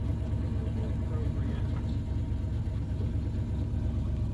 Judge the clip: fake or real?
real